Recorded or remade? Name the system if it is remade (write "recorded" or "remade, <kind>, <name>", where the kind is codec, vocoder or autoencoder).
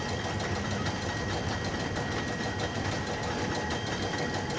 recorded